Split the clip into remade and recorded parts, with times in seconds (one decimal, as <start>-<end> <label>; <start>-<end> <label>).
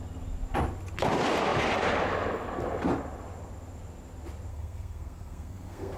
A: 0.0-4.5 recorded; 4.5-6.0 remade